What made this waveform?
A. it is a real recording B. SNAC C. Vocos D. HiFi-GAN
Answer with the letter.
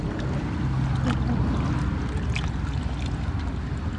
A